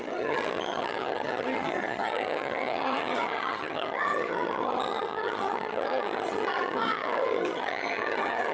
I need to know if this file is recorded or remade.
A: remade